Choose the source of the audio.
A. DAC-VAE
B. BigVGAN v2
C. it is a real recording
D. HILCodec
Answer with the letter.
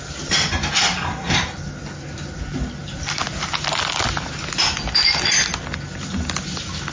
C